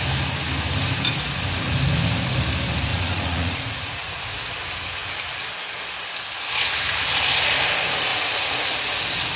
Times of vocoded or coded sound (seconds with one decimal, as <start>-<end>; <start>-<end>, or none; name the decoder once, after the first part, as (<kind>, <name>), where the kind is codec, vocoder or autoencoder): 2.9-4.2 (vocoder, Vocos); 8.1-8.7